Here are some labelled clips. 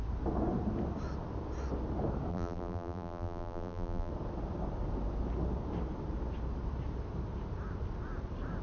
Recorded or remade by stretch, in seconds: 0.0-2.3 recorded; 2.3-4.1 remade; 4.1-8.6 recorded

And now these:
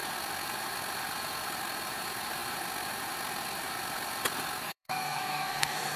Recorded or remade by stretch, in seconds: 0.0-4.6 recorded; 4.6-6.0 remade

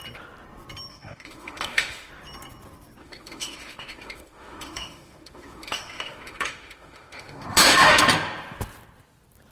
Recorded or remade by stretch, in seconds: 0.0-0.9 recorded; 0.9-2.1 remade; 2.1-3.0 recorded; 3.0-8.0 remade; 8.0-9.5 recorded